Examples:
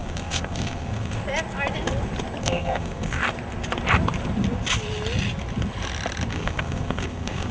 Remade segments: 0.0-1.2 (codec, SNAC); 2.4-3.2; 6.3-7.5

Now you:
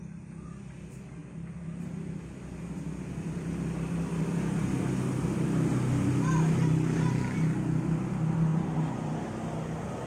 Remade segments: 1.2-1.9 (vocoder, BigVGAN v2); 8.5-9.2

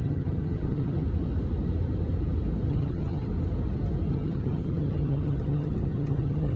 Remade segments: 0.0-1.0 (vocoder, HiFi-GAN); 2.7-3.3; 4.1-6.6

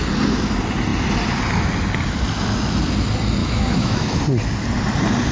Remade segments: 3.4-4.2 (autoencoder, DAC-VAE)

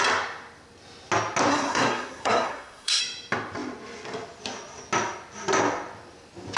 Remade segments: 1.5-3.0 (codec, SNAC)

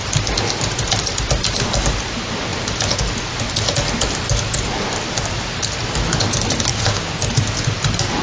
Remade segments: 6.7-7.3 (codec, DAC)